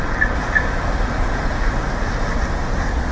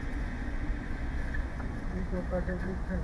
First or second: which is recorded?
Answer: first